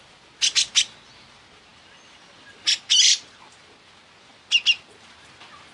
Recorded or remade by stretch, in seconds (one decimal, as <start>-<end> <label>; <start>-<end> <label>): 0.0-5.7 recorded